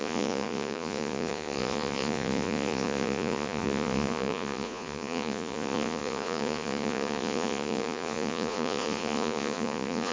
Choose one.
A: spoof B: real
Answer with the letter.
A